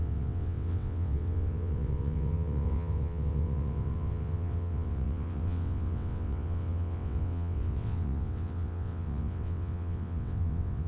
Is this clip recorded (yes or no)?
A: no